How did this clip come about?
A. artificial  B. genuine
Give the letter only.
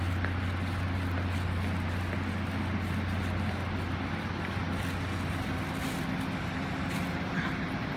B